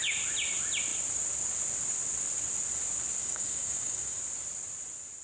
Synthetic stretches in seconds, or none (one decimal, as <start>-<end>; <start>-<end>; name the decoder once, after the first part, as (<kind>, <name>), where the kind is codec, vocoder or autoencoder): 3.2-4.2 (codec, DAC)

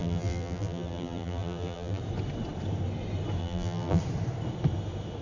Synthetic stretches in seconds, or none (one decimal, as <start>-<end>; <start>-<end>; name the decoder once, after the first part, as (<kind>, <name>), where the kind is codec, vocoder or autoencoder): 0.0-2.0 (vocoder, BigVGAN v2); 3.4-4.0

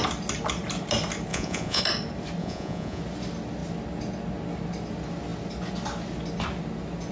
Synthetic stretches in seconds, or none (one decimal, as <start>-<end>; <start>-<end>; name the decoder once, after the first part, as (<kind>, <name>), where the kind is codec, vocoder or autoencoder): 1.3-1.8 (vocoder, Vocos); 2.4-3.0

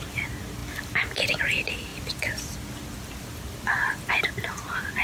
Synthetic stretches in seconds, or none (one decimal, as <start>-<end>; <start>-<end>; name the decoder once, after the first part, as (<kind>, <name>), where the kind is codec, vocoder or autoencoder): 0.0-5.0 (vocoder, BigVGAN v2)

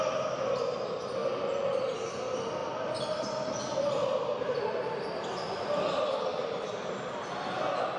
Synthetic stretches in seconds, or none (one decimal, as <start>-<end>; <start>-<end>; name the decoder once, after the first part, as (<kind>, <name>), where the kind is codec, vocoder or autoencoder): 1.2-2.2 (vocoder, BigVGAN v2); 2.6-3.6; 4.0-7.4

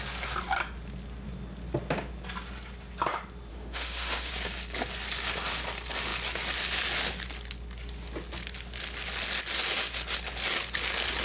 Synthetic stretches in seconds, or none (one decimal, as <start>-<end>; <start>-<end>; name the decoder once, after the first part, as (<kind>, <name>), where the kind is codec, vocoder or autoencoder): 3.5-4.3 (autoencoder, DAC-VAE)